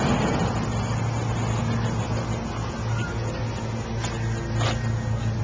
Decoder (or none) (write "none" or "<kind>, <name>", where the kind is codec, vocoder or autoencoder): none